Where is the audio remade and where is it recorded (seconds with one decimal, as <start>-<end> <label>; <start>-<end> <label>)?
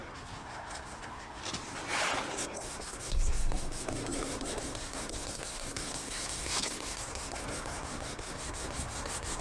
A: 0.0-1.4 remade; 1.4-2.3 recorded; 2.3-9.4 remade